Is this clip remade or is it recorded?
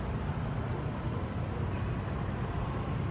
recorded